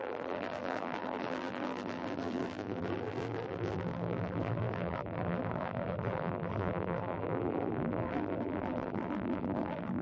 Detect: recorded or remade remade